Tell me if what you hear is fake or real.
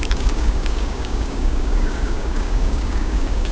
fake